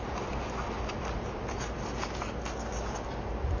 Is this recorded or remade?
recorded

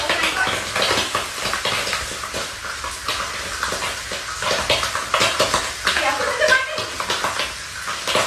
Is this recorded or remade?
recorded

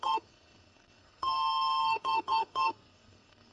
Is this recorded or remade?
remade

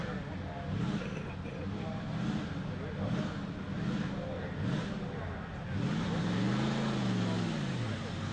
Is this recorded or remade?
recorded